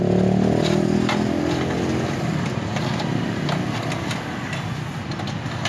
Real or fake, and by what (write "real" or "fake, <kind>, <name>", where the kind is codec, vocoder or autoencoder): real